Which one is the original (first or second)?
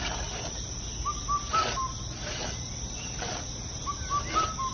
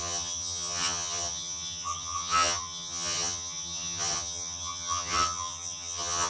first